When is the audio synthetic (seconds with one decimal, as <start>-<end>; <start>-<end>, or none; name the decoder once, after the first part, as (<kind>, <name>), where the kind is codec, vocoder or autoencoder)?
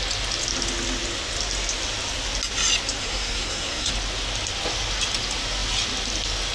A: 3.0-3.9 (codec, SNAC)